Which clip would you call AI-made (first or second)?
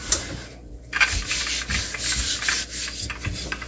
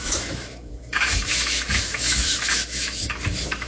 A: second